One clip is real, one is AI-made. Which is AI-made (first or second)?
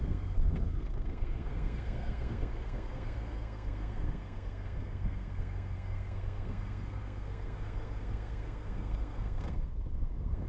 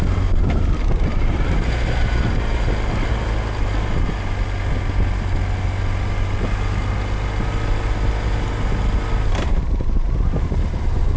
first